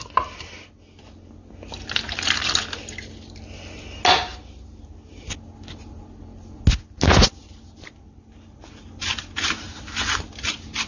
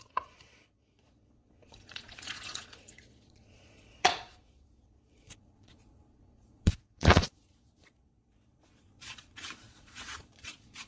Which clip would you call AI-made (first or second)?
second